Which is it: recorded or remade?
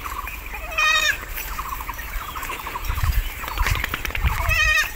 remade